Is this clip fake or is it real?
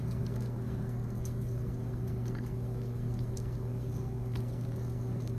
fake